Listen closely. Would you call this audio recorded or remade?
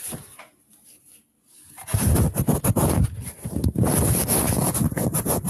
recorded